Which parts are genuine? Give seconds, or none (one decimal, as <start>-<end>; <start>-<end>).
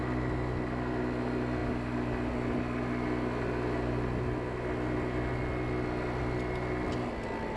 0.0-7.6